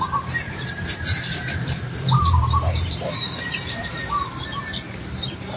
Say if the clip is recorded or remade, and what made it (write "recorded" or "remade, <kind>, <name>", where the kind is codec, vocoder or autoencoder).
remade, vocoder, BigVGAN v2